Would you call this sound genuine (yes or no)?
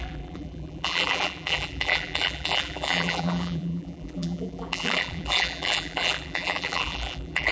no